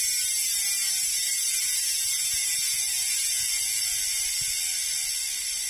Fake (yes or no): no